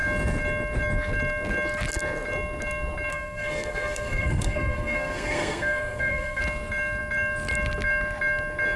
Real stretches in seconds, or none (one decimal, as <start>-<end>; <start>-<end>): 0.0-3.1; 6.4-8.8